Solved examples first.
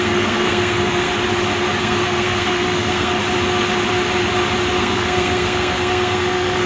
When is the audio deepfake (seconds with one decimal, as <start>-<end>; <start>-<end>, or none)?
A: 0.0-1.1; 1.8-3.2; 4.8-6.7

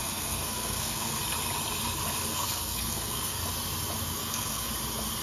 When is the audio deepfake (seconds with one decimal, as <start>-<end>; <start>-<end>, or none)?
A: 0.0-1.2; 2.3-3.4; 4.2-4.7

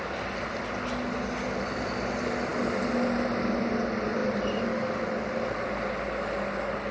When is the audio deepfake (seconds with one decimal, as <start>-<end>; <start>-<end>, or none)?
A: none